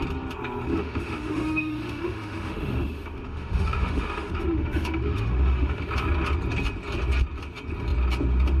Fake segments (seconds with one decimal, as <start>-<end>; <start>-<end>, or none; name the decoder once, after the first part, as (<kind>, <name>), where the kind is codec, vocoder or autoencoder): 0.7-5.9 (autoencoder, DAC-VAE)